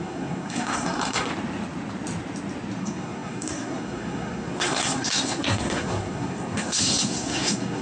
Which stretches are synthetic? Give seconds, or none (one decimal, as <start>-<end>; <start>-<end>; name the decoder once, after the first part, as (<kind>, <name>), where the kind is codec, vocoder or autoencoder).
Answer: 0.0-1.3 (codec, SNAC); 2.8-7.8